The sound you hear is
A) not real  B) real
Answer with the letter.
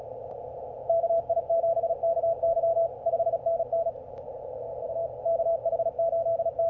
B